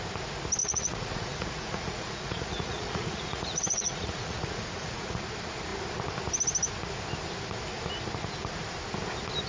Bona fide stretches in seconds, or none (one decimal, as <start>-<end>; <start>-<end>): 0.0-0.6; 5.2-9.5